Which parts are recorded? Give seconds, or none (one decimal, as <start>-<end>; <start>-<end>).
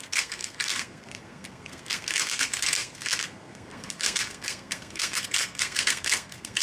none